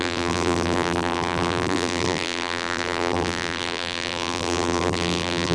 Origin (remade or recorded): remade